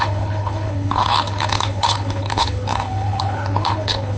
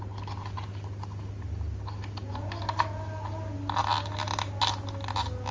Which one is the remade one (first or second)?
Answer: first